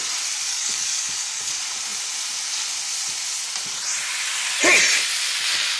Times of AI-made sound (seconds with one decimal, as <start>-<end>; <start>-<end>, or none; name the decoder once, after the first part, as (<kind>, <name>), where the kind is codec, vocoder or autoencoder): 0.5-1.5 (codec, DAC)